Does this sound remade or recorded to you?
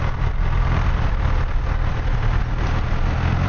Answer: recorded